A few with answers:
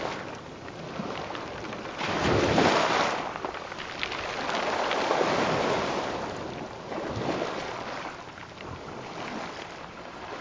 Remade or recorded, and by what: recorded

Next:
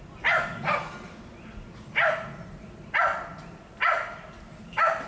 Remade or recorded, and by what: recorded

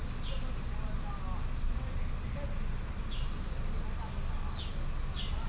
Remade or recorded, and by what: recorded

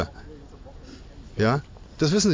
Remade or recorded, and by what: recorded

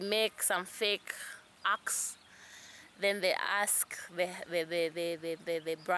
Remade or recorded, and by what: recorded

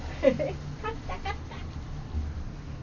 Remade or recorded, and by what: recorded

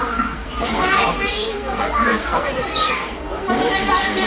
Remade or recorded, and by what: remade, codec, SNAC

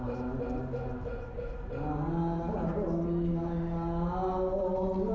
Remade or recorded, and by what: recorded